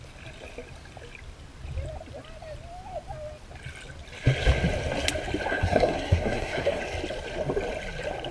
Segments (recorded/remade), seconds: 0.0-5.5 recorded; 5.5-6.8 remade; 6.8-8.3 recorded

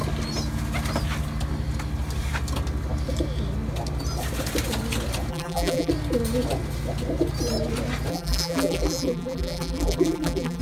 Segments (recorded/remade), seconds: 0.0-5.3 recorded; 5.3-5.9 remade; 5.9-8.1 recorded; 8.1-10.6 remade